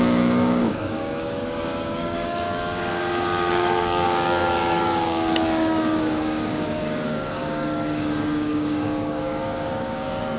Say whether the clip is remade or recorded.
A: remade